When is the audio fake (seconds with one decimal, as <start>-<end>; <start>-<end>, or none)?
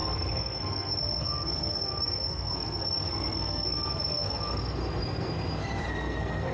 0.0-6.5